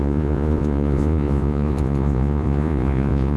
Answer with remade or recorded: remade